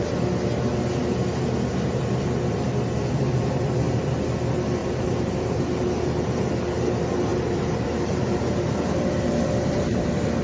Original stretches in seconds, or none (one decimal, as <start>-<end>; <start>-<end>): 0.0-4.8; 5.6-7.3; 8.6-10.4

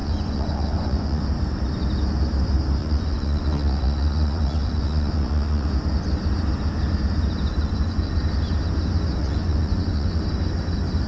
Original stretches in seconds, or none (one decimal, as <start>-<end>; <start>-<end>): 1.2-2.8; 5.7-7.5; 8.2-9.2; 10.2-11.1

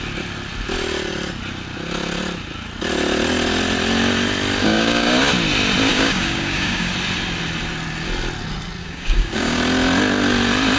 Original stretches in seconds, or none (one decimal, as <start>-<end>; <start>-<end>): 0.0-4.6; 5.2-5.9; 6.9-8.8; 9.6-10.8

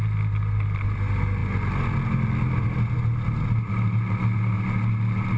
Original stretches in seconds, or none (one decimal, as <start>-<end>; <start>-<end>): 0.0-5.4

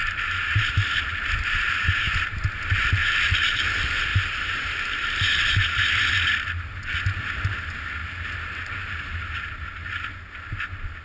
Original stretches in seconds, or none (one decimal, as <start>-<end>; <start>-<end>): 1.8-3.0; 3.6-4.1; 5.2-8.0; 10.0-11.0

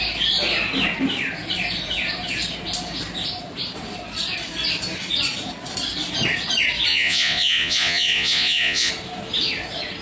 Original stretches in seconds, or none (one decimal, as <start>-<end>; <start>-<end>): 0.0-6.9; 8.9-10.0

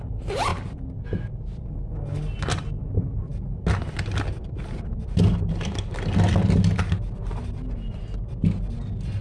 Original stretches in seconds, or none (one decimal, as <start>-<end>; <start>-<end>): 0.0-9.2